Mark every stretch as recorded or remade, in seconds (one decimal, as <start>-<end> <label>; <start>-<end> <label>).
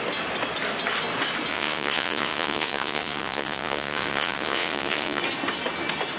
0.0-1.5 recorded; 1.5-5.2 remade; 5.2-6.2 recorded